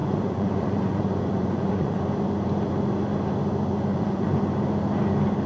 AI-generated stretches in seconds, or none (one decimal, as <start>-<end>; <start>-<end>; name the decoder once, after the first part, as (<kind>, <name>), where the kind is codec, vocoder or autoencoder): 0.0-2.0 (vocoder, Vocos); 3.9-4.4